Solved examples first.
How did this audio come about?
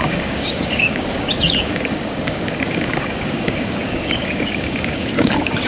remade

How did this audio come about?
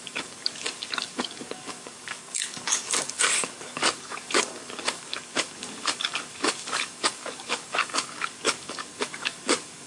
remade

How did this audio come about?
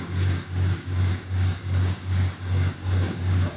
remade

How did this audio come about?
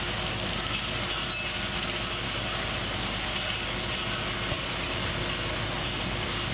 recorded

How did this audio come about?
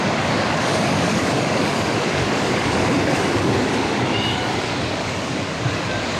remade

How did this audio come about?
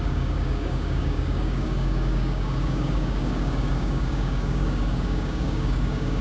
remade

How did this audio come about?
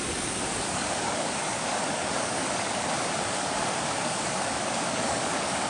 remade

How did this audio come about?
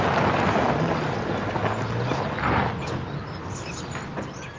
recorded